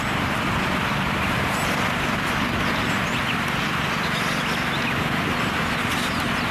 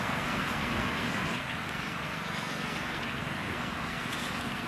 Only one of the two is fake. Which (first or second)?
second